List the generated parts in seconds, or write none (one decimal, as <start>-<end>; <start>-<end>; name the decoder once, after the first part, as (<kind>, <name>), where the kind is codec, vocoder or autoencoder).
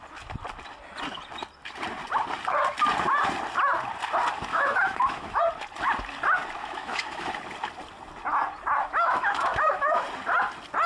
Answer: 4.5-5.4 (autoencoder, DAC-VAE); 6.6-7.3; 8.8-10.0